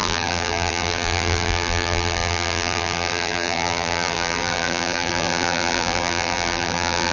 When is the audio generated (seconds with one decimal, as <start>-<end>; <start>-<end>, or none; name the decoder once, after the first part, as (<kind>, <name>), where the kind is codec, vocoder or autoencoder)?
0.0-7.1 (vocoder, BigVGAN v2)